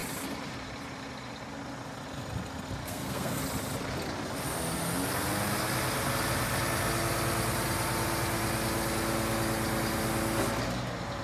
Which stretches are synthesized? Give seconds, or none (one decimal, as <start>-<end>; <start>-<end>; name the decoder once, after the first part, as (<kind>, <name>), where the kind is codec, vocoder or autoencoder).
2.8-3.4 (codec, SNAC)